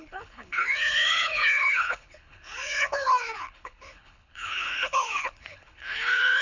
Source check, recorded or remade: remade